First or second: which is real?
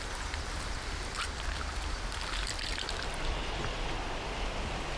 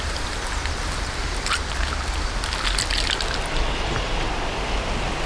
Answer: second